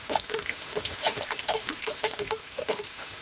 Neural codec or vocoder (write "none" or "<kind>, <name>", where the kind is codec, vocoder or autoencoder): autoencoder, DAC-VAE